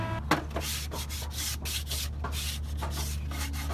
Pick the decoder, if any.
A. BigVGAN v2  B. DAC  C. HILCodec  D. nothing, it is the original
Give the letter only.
D